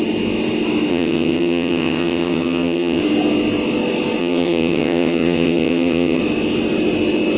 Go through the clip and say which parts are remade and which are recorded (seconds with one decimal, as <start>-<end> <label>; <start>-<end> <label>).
0.0-0.9 recorded; 0.9-3.0 remade; 3.0-4.2 recorded; 4.2-6.2 remade; 6.2-7.4 recorded